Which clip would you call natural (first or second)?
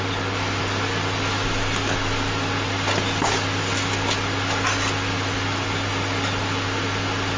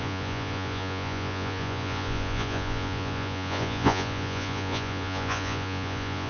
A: first